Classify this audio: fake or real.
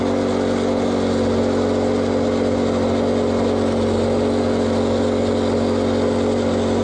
real